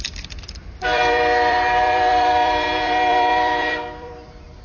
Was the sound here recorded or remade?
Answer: remade